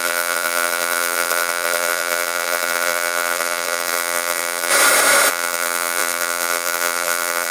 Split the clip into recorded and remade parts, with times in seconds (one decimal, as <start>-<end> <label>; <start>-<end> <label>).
0.0-4.7 remade; 4.7-5.3 recorded; 5.3-7.5 remade